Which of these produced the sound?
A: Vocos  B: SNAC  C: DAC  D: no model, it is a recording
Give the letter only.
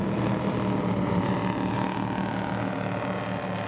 D